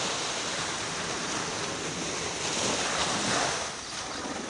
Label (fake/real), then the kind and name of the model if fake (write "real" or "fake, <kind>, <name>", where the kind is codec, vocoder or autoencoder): real